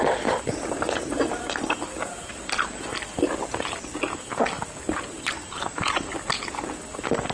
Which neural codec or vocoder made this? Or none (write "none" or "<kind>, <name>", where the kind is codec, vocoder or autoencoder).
none